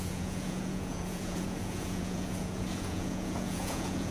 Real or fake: fake